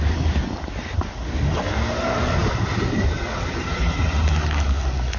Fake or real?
real